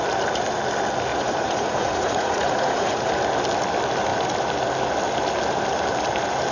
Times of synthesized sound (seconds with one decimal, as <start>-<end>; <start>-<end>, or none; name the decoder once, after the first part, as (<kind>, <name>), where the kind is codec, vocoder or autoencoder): 1.1-3.1 (vocoder, Vocos)